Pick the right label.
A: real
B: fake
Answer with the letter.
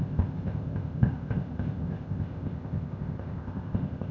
B